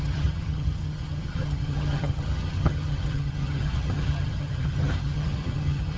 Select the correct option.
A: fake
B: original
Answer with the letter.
A